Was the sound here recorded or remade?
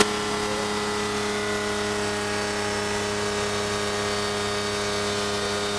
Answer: recorded